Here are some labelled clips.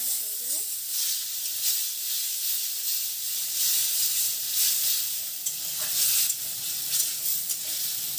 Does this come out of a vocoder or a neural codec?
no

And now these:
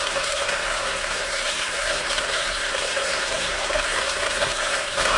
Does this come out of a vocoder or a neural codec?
yes